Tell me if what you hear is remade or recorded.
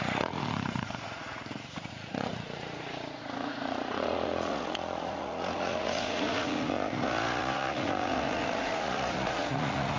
remade